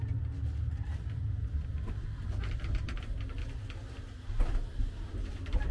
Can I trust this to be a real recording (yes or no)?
yes